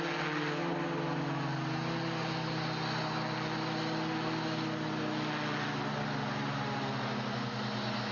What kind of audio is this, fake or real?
real